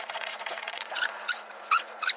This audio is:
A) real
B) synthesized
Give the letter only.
B